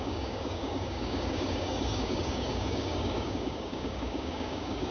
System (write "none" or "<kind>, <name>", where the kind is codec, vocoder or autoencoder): codec, DAC